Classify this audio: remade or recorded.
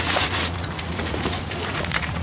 remade